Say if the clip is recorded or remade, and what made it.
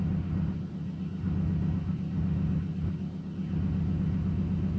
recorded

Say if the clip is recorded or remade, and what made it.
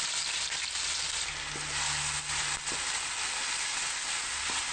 recorded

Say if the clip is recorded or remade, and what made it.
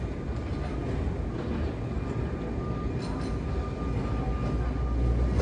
recorded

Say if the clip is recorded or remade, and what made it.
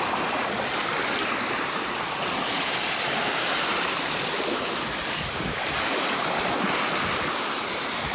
recorded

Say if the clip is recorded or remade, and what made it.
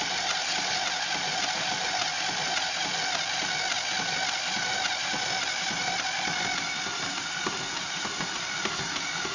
recorded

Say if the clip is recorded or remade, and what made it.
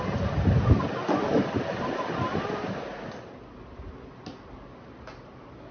recorded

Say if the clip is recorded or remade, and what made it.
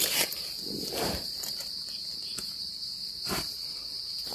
remade, vocoder, BigVGAN v2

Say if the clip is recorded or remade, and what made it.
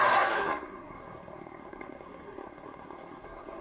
remade, codec, SNAC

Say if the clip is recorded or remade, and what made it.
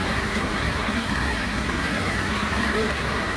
remade, codec, SNAC